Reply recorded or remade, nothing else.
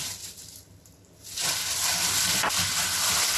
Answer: recorded